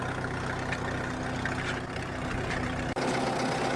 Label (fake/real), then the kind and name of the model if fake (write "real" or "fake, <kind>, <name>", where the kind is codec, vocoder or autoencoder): real